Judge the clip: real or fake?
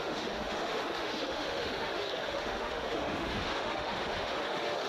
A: fake